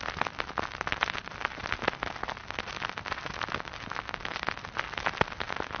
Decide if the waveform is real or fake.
real